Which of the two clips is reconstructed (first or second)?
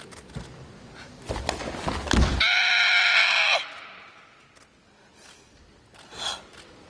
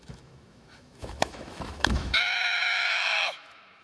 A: second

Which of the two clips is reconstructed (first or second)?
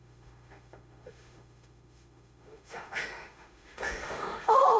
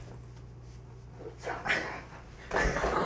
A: first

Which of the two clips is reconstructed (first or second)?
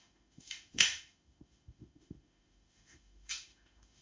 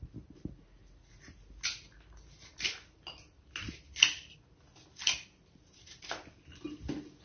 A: first